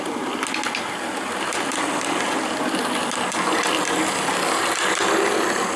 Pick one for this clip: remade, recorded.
recorded